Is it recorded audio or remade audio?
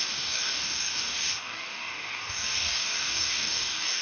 remade